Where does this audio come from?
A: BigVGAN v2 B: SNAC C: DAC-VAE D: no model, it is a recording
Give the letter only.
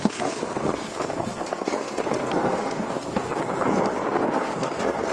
B